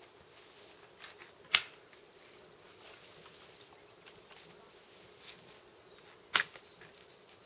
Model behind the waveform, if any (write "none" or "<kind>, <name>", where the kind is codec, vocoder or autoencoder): none